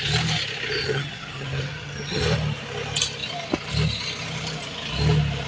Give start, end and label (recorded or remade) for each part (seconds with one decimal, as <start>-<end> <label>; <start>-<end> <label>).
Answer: 0.0-0.8 recorded; 0.8-2.2 remade; 2.2-5.5 recorded